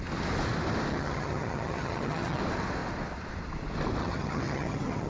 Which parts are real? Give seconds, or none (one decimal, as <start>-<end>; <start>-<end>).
0.0-0.9; 2.4-4.0